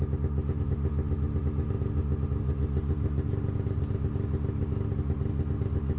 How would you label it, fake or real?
real